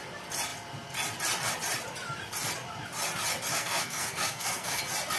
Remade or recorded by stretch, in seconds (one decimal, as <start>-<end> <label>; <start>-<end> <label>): 0.0-3.5 recorded; 3.5-4.8 remade; 4.8-5.2 recorded